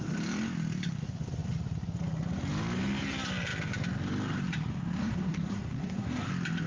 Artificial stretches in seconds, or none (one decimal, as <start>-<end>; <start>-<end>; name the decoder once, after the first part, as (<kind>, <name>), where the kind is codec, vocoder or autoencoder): 5.0-6.3 (codec, SNAC)